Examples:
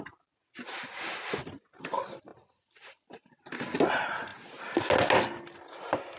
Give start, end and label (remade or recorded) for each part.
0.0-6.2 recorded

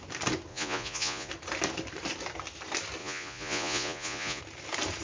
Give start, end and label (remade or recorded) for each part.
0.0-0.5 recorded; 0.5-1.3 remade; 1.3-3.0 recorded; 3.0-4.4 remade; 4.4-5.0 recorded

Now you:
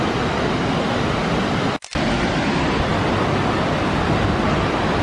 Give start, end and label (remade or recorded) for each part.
0.0-5.0 recorded

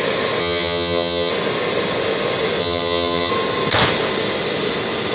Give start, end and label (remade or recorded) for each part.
0.0-0.4 recorded; 0.4-1.3 remade; 1.3-2.6 recorded; 2.6-3.3 remade; 3.3-5.1 recorded

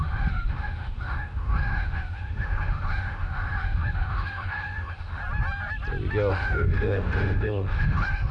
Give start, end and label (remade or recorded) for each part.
0.0-5.2 remade; 5.2-6.3 recorded; 6.3-8.3 remade